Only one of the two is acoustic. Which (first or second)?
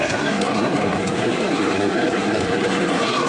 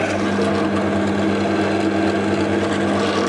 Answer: second